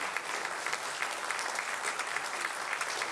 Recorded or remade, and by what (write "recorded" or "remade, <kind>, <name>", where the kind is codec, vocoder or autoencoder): recorded